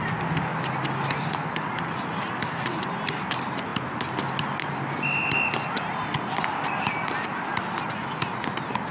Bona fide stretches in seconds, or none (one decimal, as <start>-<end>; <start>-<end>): 0.0-8.9